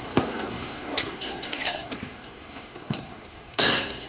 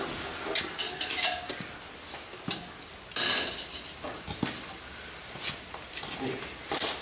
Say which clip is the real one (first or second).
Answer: second